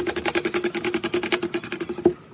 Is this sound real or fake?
real